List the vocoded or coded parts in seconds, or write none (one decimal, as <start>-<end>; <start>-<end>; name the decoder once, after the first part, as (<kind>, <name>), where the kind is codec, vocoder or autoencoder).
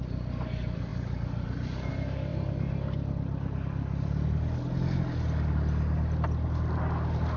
0.9-1.9 (vocoder, BigVGAN v2)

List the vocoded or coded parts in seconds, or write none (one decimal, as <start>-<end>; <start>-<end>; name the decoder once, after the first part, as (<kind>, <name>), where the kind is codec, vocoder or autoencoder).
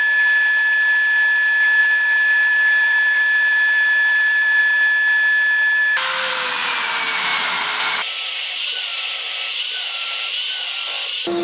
1.8-4.6 (vocoder, BigVGAN v2); 7.3-10.5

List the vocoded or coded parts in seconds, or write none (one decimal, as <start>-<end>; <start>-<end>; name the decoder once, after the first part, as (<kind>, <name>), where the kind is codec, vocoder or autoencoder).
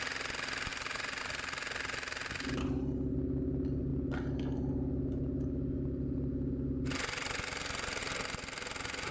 none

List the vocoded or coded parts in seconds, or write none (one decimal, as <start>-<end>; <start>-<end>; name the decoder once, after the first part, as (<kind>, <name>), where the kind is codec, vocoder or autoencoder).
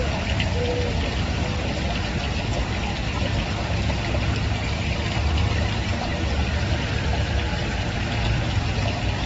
none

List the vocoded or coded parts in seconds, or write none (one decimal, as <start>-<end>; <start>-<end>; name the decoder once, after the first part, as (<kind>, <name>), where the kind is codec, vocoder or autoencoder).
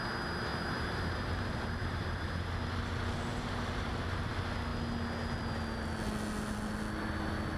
0.5-2.3 (vocoder, BigVGAN v2); 3.3-4.3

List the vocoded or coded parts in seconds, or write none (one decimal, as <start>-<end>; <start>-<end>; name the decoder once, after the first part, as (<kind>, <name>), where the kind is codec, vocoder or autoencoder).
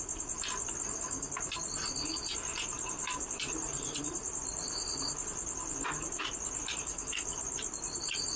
3.0-6.2 (vocoder, BigVGAN v2)